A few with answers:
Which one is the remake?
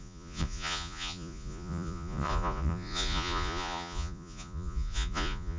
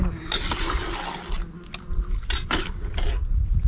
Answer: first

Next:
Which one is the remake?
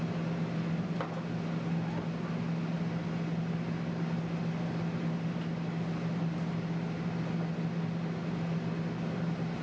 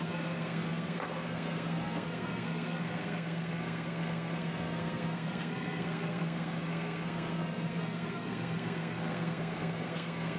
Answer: second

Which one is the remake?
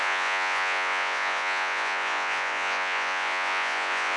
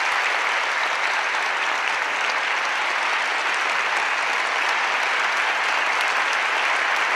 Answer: first